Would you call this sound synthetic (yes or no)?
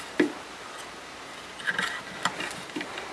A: no